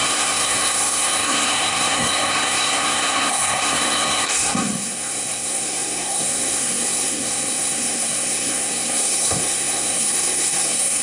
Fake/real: fake